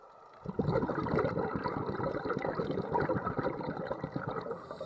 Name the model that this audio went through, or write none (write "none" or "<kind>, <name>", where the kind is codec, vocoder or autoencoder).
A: none